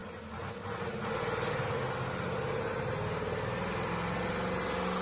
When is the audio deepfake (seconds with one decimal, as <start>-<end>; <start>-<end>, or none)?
none